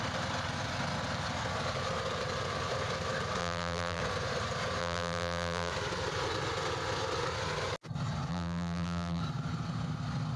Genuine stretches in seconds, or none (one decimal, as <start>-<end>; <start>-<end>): 0.0-3.4; 4.0-4.8; 5.7-8.3; 9.2-10.4